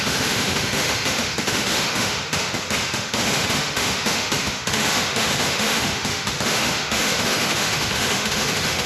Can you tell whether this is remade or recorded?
remade